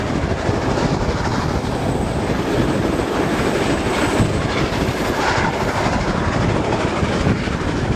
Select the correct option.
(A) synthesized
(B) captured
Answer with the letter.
B